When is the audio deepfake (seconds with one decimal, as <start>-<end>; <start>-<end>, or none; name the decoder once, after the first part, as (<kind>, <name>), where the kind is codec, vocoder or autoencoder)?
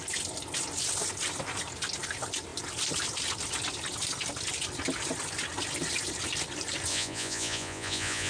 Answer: 6.9-8.3 (vocoder, Vocos)